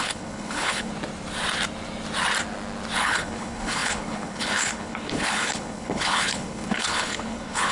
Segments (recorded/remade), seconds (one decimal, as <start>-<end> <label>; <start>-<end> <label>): 0.0-0.9 remade; 0.9-3.0 recorded; 3.0-7.7 remade